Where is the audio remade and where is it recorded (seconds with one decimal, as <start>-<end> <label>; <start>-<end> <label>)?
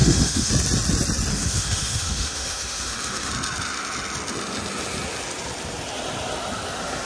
0.0-0.5 remade; 0.5-1.3 recorded; 1.3-3.3 remade; 3.3-7.1 recorded